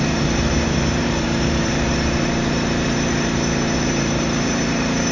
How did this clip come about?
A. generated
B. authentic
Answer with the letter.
A